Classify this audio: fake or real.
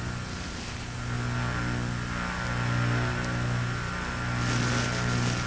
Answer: real